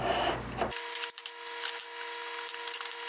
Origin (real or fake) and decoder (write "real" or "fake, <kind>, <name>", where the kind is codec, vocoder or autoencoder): real